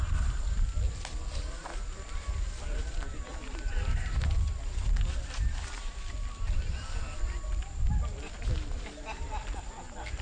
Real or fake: real